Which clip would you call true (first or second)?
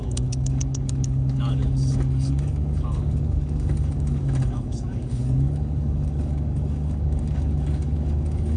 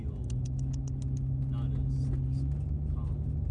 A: second